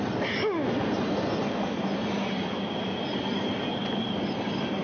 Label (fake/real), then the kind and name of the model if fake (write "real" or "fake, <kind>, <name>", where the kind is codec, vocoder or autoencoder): real